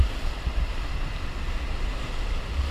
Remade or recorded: remade